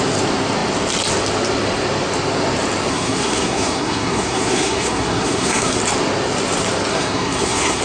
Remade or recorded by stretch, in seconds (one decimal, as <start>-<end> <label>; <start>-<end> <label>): 0.0-2.9 recorded; 2.9-5.8 remade; 5.8-6.9 recorded; 6.9-7.8 remade